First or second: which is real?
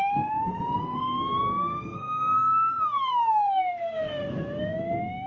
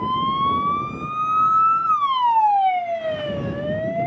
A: second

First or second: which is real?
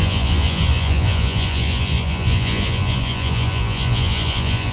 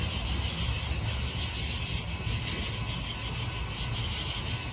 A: second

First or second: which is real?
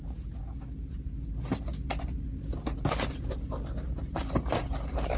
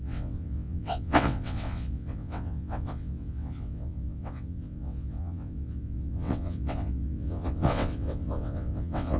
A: first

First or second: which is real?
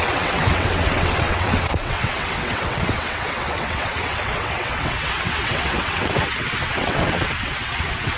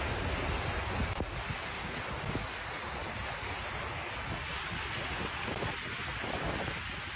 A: second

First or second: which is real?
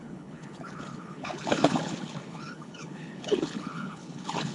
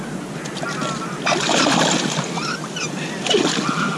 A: second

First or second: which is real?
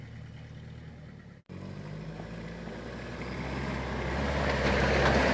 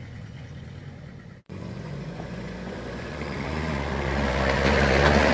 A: first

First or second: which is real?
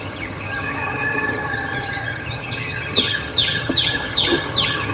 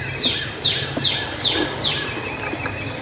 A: second